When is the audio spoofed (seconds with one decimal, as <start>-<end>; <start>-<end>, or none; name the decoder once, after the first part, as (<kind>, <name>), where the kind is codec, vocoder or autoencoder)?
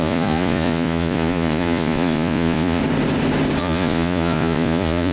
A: 0.0-2.8 (vocoder, Vocos); 3.6-5.1